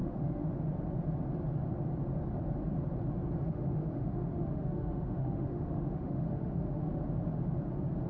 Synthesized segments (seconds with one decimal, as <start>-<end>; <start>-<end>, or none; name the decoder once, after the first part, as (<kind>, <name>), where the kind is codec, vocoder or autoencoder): 0.0-0.7 (autoencoder, DAC-VAE); 3.4-7.0